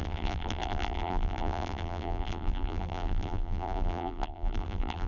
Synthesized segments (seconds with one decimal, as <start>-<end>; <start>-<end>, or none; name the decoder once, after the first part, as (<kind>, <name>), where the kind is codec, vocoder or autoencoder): 0.0-5.1 (vocoder, BigVGAN v2)